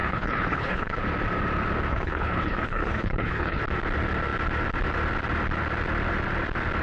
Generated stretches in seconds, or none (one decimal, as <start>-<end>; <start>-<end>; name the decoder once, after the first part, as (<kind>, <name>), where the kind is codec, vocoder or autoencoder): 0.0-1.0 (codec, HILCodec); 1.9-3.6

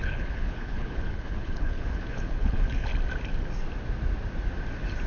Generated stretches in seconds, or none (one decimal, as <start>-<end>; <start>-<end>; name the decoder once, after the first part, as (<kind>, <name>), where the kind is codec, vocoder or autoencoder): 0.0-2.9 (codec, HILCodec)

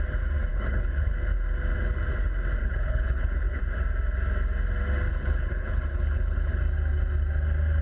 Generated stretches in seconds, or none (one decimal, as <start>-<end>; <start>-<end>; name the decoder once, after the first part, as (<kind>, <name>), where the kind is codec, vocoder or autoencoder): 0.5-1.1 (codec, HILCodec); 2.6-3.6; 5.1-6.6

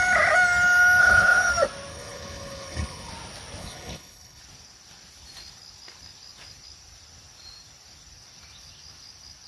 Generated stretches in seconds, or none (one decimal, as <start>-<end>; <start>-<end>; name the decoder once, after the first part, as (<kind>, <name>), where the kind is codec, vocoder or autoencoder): 1.0-1.5 (codec, HILCodec); 1.9-3.1; 3.6-4.4

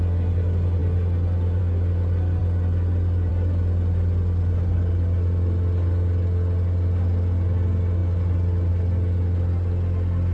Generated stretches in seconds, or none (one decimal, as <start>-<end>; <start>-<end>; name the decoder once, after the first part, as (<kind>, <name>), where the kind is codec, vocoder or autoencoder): none

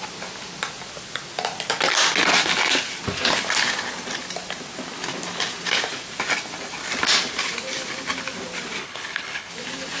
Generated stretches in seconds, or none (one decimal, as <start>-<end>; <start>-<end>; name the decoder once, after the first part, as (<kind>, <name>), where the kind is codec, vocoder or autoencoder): 8.8-9.5 (codec, HILCodec)